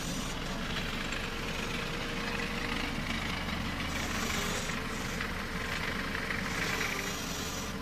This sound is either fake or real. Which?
real